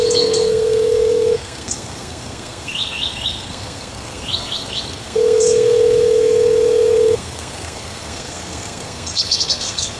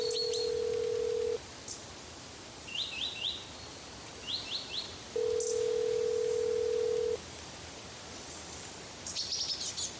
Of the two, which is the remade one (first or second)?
first